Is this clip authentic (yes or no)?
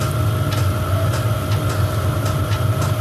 yes